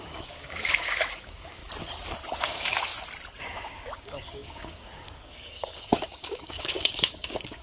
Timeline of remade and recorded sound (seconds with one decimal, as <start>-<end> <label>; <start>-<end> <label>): 0.0-1.6 remade; 1.6-2.4 recorded; 2.4-2.9 remade; 2.9-3.4 recorded; 3.4-7.6 remade